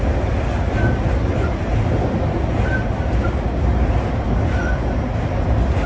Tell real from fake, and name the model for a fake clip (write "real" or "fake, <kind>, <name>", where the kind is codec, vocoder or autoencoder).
real